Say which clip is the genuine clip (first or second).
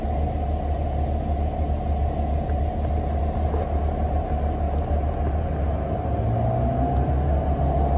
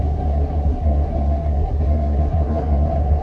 first